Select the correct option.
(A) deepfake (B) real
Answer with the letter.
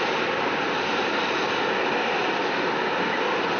A